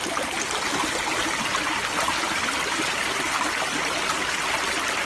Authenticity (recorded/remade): recorded